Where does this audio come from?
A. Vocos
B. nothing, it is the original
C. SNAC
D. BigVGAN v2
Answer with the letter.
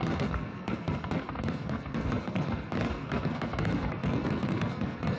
C